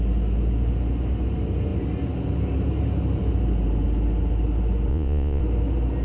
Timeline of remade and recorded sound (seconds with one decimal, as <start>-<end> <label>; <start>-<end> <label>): 0.0-4.9 recorded; 4.9-5.4 remade; 5.4-6.0 recorded